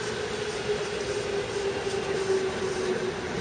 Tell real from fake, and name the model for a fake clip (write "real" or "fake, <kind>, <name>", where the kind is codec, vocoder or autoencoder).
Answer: real